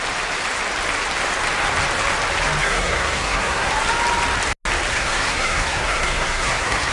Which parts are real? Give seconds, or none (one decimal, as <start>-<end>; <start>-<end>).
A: 0.0-2.6; 3.7-4.9